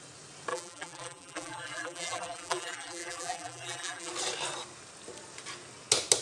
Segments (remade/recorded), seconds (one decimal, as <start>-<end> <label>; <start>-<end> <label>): 0.0-0.5 recorded; 0.5-4.1 remade; 4.1-6.2 recorded